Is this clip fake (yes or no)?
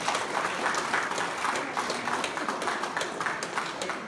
no